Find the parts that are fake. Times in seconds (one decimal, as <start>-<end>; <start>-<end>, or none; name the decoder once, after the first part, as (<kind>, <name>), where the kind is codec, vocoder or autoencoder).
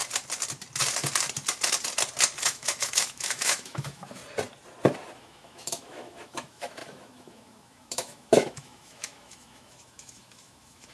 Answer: 2.4-4.2 (autoencoder, DAC-VAE); 5.1-10.9